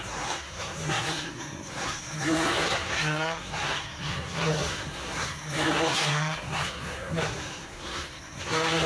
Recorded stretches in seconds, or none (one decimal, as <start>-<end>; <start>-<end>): none